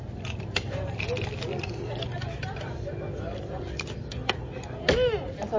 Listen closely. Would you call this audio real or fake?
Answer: real